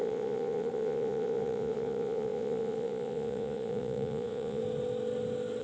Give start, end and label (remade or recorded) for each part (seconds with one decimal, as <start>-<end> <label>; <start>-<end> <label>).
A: 0.0-4.6 remade; 4.6-5.6 recorded